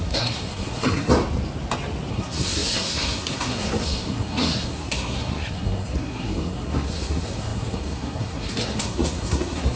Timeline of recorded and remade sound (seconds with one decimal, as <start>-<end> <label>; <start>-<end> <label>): 0.0-1.1 remade; 1.1-2.1 recorded; 2.1-9.8 remade

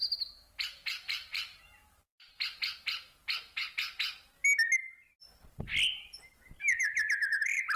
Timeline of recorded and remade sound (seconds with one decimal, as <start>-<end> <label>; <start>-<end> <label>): 0.0-2.1 remade; 2.1-6.8 recorded; 6.8-7.8 remade

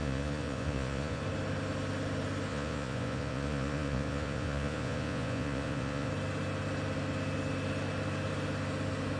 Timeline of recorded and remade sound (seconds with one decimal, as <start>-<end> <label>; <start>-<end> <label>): 0.0-1.2 remade; 1.2-2.5 recorded; 2.5-6.1 remade; 6.1-9.2 recorded

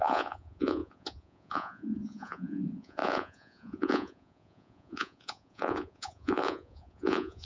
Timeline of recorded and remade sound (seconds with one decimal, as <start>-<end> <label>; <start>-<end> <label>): 0.0-7.5 remade